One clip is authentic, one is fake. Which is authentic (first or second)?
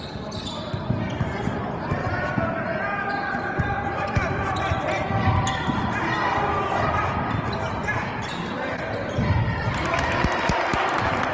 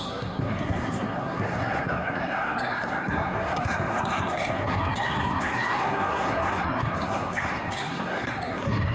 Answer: first